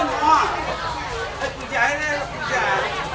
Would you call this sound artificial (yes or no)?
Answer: no